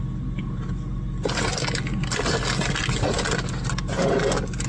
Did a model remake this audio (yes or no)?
no